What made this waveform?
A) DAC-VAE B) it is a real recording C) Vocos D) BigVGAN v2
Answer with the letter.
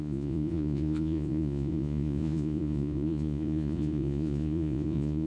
C